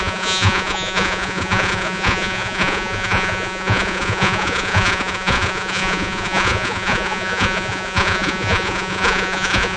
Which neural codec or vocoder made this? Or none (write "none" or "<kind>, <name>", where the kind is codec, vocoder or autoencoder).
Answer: vocoder, Vocos